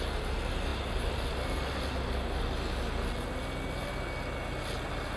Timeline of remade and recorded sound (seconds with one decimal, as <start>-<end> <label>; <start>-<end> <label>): 0.0-5.2 recorded